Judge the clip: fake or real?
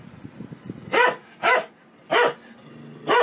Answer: real